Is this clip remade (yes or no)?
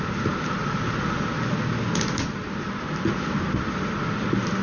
no